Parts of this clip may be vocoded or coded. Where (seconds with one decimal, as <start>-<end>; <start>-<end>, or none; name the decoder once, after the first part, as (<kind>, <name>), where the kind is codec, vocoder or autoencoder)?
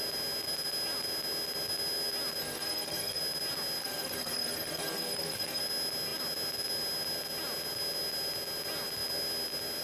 2.4-3.2 (codec, SNAC); 3.8-5.6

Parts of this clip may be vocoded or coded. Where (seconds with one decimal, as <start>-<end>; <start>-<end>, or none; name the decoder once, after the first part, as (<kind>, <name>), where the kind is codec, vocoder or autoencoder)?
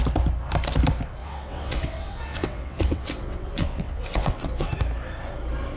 1.2-4.7 (vocoder, WaveNeXt)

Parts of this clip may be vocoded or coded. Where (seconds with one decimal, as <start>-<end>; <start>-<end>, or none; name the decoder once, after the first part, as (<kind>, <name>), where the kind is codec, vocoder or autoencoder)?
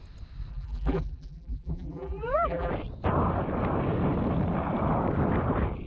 0.5-2.7 (vocoder, BigVGAN v2)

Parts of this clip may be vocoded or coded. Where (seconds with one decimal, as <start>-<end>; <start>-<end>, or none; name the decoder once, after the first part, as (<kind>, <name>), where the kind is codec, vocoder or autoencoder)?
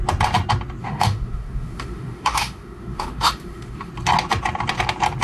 0.8-3.9 (autoencoder, DAC-VAE)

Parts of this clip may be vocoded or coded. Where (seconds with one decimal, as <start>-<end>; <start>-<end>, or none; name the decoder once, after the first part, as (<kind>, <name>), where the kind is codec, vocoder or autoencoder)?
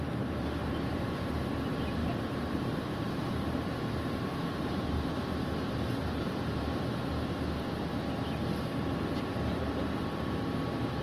0.6-1.3 (vocoder, BigVGAN v2); 2.0-6.7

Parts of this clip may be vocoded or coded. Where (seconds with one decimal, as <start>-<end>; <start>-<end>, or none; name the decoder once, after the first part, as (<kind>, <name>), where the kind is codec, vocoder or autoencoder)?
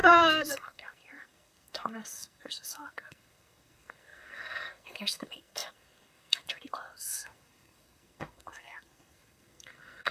0.0-10.1 (codec, SNAC)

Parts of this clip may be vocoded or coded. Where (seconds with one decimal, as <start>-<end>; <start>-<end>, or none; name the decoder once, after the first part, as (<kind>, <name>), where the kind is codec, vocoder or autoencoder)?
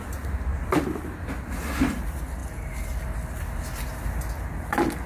none